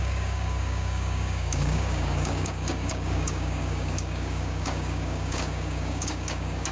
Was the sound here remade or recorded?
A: remade